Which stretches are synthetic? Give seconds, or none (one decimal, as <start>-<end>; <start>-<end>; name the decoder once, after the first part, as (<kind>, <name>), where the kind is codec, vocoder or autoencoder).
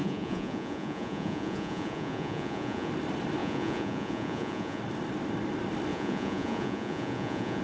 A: 0.0-2.9 (vocoder, Vocos); 3.4-4.8; 5.9-7.6